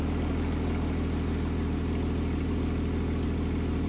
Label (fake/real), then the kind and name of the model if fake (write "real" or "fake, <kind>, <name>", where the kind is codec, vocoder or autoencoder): real